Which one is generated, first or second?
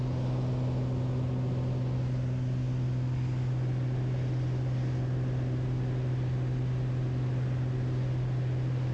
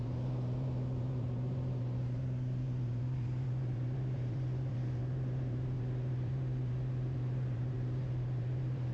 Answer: second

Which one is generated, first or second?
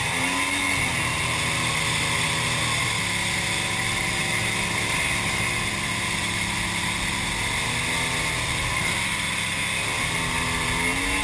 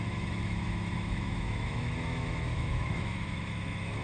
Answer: second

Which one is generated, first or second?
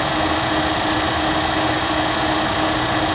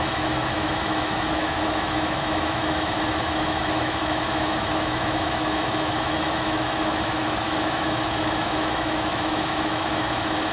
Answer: second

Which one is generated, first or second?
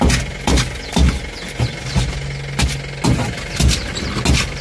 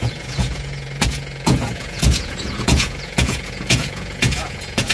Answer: second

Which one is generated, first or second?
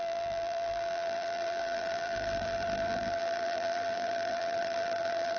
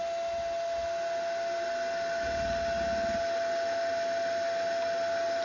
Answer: first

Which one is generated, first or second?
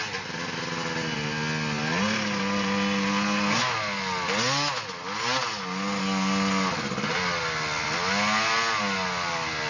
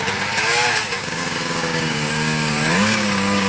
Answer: second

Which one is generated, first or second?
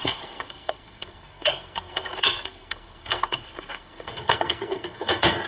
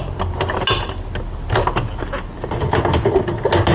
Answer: first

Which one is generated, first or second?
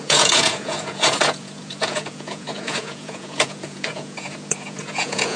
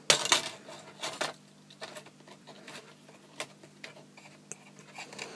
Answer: first